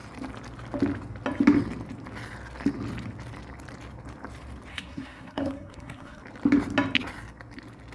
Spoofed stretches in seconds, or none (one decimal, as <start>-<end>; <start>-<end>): 4.7-6.2